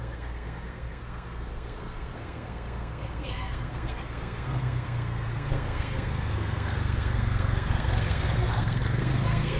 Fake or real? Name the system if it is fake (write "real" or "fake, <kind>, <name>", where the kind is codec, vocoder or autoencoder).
fake, codec, SNAC